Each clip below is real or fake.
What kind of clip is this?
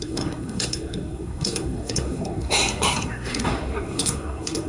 fake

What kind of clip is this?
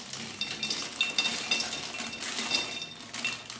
real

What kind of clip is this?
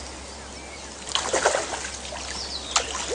real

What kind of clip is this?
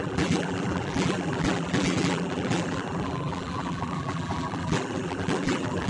fake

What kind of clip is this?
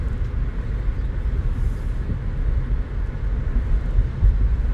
real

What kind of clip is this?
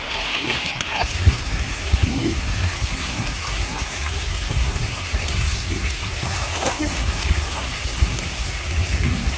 fake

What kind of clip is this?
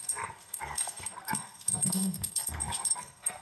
fake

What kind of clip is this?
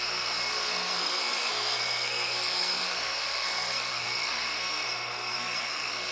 fake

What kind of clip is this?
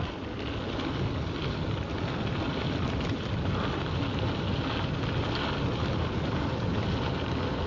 real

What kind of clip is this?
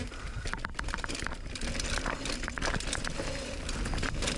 real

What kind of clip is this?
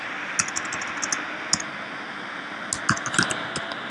real